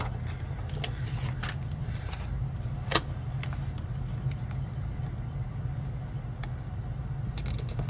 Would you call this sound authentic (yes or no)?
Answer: yes